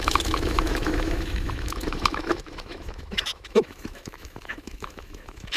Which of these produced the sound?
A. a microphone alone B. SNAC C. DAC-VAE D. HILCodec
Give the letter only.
C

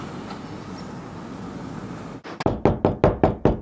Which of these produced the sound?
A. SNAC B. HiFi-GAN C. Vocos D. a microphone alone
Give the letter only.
D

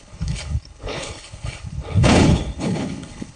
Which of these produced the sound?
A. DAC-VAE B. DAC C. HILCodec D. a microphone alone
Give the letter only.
C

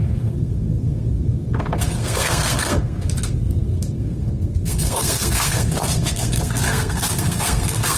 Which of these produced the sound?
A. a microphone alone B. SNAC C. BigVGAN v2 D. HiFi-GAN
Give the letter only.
B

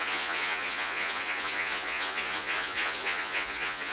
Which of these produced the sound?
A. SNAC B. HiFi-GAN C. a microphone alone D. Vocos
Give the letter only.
D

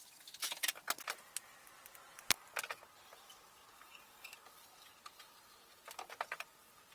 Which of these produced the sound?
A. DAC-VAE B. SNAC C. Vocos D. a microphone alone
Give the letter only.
D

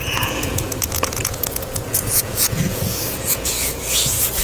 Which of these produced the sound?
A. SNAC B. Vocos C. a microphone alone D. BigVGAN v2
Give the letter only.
B